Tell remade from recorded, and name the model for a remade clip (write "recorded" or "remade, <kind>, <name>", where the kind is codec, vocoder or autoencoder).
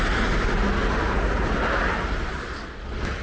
recorded